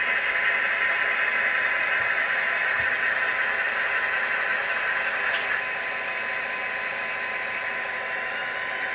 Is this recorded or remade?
recorded